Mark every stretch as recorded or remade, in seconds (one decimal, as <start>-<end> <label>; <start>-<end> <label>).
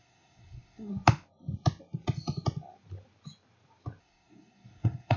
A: 0.0-0.9 remade; 0.9-4.0 recorded; 4.0-5.2 remade